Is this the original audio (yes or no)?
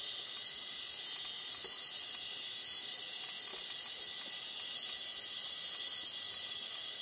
yes